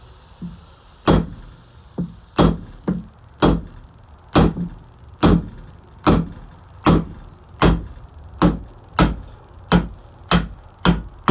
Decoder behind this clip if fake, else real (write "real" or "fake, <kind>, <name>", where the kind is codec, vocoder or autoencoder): real